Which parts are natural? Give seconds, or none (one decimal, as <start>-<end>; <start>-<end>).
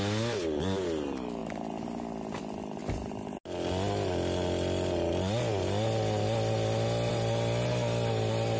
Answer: 0.0-8.6